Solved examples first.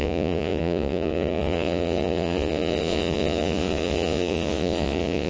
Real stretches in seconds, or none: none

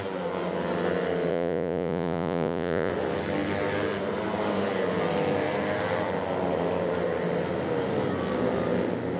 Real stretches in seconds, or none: 0.0-1.3; 2.9-9.2

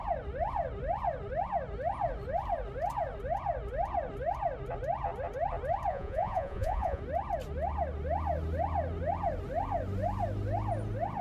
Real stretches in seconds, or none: 0.0-5.9; 7.0-11.2